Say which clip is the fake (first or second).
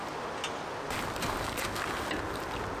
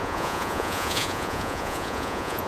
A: second